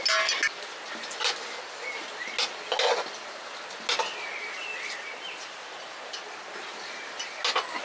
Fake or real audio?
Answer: real